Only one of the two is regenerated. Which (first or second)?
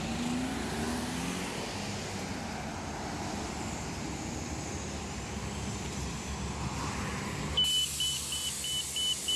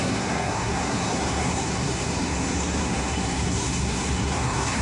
second